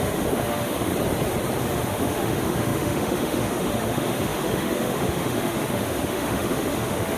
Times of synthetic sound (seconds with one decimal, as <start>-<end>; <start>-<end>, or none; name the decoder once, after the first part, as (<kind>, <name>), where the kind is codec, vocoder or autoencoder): 0.0-0.9 (autoencoder, DAC-VAE); 1.6-7.2